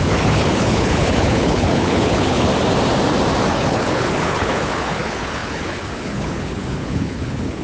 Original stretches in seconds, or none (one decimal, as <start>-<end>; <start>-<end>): 2.5-3.5